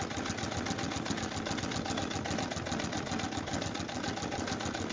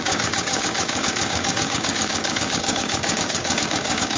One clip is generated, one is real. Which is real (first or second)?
first